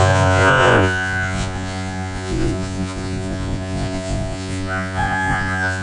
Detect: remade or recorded remade